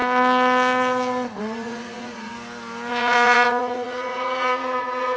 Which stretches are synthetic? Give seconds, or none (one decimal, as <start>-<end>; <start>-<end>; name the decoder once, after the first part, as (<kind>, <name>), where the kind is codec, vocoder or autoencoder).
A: 1.4-2.3 (vocoder, Vocos); 2.9-5.2